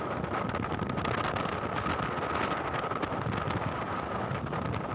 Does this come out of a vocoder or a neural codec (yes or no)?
no